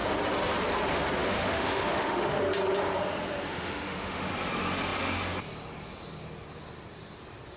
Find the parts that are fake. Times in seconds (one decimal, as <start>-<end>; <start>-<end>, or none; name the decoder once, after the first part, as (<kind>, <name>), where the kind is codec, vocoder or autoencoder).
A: 1.2-2.4 (autoencoder, DAC-VAE); 3.5-4.3